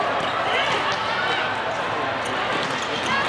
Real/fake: real